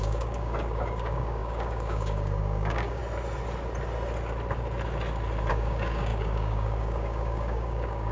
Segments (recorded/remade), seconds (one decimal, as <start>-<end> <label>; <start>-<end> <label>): 0.0-3.0 remade; 3.0-5.5 recorded; 5.5-8.1 remade

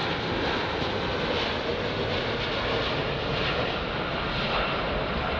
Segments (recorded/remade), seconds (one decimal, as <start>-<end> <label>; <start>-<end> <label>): 0.0-5.4 recorded

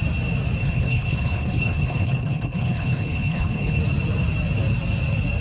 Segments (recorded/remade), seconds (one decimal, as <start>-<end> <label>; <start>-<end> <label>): 0.0-0.6 recorded; 0.6-3.8 remade; 3.8-5.4 recorded

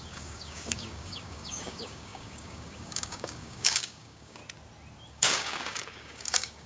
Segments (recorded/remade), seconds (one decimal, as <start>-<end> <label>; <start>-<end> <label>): 0.0-4.4 remade; 4.4-5.1 recorded; 5.1-6.7 remade

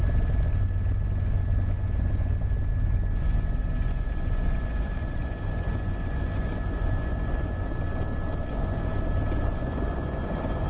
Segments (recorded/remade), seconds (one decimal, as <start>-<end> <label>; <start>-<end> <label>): 0.0-7.7 remade; 7.7-8.5 recorded; 8.5-8.9 remade; 8.9-9.4 recorded; 9.4-10.7 remade

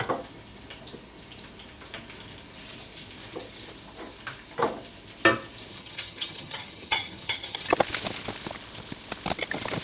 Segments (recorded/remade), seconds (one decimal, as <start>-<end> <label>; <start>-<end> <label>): 0.0-5.7 recorded; 5.7-7.7 remade; 7.7-9.8 recorded

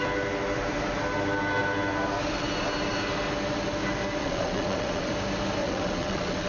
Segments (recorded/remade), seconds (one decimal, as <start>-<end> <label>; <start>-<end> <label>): 0.0-4.2 recorded; 4.2-5.1 remade; 5.1-5.6 recorded; 5.6-6.5 remade

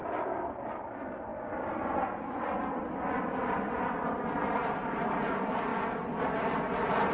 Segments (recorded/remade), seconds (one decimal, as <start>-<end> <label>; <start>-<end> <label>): 0.0-0.7 remade; 0.7-7.1 recorded